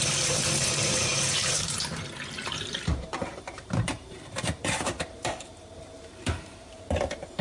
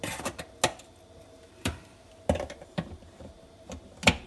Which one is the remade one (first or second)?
first